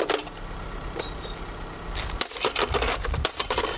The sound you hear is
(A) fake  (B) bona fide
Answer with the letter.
B